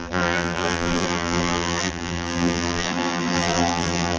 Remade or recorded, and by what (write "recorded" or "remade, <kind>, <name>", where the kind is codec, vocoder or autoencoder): remade, vocoder, BigVGAN v2